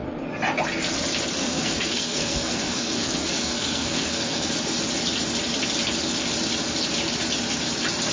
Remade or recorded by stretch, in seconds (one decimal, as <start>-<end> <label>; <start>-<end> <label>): 0.0-1.4 recorded; 1.4-4.5 remade; 4.5-8.1 recorded